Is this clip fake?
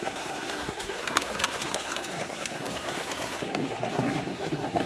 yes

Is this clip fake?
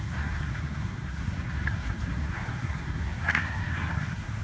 yes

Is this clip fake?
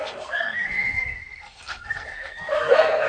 yes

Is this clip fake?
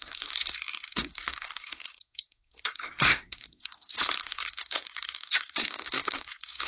yes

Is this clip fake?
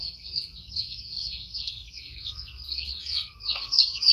yes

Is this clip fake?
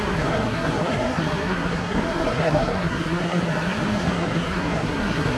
yes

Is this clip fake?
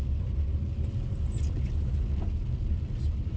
no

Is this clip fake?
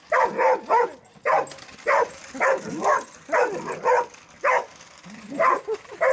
no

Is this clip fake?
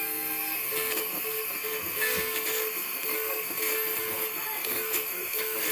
yes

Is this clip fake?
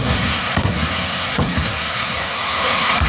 yes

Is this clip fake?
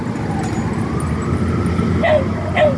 no